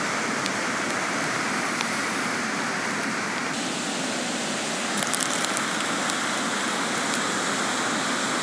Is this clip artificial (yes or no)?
no